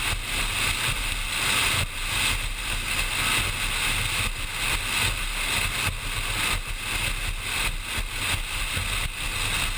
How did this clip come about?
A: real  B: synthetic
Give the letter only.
A